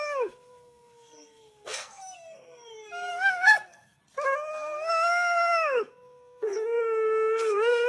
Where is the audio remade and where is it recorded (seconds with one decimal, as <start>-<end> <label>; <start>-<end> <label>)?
0.0-4.0 remade; 4.0-4.9 recorded; 4.9-7.9 remade